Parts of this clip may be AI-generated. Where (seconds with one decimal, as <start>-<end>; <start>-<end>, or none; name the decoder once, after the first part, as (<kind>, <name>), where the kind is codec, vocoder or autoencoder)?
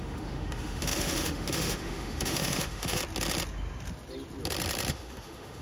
0.0-3.0 (autoencoder, DAC-VAE); 4.9-5.6